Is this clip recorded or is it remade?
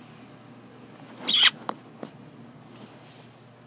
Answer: recorded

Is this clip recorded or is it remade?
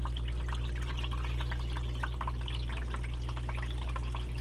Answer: recorded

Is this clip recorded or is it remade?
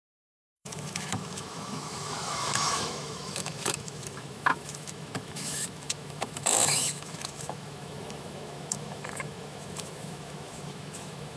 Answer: remade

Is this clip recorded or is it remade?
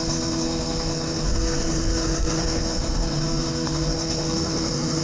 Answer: remade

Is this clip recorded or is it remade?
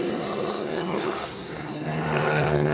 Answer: remade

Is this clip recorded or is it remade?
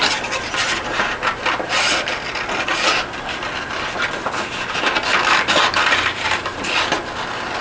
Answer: recorded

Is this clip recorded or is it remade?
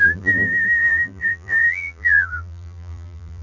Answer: remade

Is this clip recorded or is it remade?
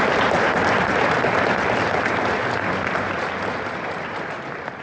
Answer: recorded